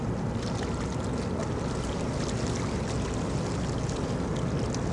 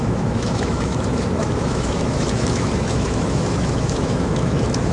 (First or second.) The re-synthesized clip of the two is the second